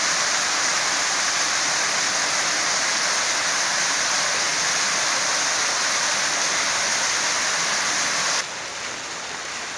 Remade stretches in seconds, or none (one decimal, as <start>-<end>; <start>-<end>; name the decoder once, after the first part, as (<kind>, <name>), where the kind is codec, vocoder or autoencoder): none